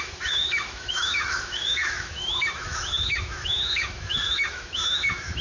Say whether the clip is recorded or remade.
remade